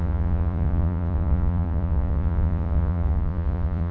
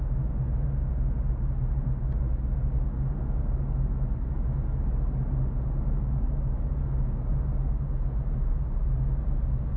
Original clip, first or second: second